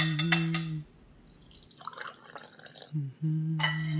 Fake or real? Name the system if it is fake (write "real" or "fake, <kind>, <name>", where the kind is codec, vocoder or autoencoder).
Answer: real